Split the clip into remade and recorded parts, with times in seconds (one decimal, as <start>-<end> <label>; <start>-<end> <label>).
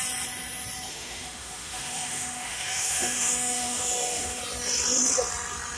0.0-0.9 recorded; 0.9-4.4 remade; 4.4-5.8 recorded